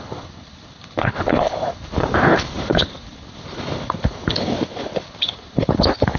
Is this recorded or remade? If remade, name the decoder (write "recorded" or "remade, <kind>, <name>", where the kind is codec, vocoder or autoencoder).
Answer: remade, codec, HILCodec